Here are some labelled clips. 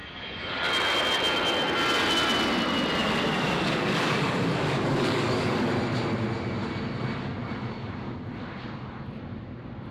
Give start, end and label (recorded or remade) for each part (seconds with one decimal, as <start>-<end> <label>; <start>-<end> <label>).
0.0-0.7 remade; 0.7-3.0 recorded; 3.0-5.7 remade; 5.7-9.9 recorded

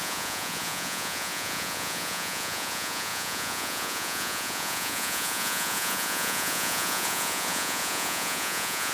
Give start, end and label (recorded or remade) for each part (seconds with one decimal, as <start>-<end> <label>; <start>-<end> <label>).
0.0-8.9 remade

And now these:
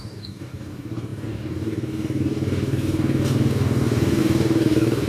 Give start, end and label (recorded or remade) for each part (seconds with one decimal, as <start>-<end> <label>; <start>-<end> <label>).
0.0-5.1 remade

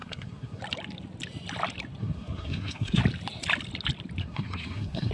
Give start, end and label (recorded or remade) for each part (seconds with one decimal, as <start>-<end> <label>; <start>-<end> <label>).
0.0-0.6 remade; 0.6-2.0 recorded; 2.0-3.0 remade; 3.0-4.2 recorded; 4.2-5.1 remade

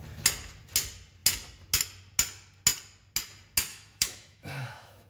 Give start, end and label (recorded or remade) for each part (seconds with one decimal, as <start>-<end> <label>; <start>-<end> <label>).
0.0-3.7 recorded; 3.7-5.1 remade

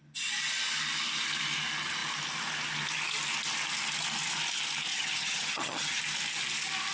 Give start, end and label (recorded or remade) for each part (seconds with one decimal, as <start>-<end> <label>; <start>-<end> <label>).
0.0-4.9 recorded; 4.9-6.0 remade; 6.0-6.9 recorded